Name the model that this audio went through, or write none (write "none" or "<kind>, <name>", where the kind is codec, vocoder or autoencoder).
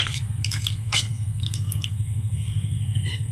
codec, SNAC